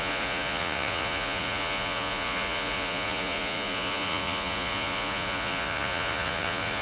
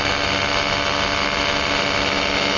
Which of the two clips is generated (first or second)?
first